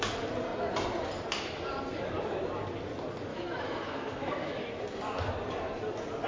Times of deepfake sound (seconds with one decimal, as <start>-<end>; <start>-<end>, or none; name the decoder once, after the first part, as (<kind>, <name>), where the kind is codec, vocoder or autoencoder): 3.3-4.8 (autoencoder, DAC-VAE)